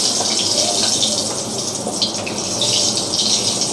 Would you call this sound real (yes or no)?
yes